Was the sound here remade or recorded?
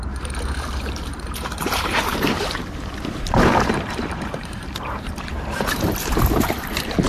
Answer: remade